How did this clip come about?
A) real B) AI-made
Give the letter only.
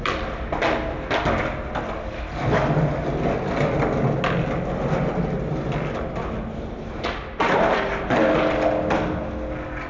A